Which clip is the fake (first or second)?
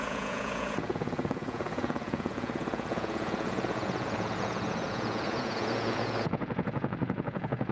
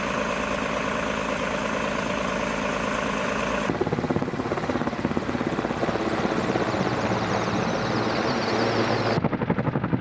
first